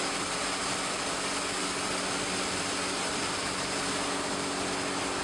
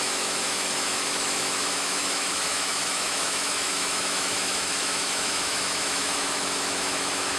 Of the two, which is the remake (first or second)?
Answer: second